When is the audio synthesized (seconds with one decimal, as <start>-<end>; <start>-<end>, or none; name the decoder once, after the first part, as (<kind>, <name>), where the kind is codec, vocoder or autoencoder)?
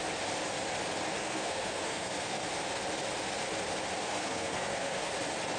1.2-2.4 (codec, SNAC); 4.0-5.1